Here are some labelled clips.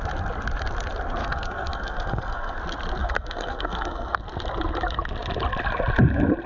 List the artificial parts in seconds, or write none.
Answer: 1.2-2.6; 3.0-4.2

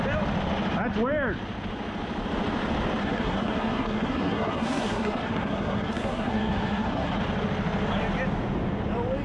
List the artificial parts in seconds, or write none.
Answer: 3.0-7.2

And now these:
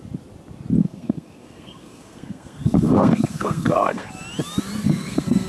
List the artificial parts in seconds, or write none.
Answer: 0.8-4.1; 4.8-5.5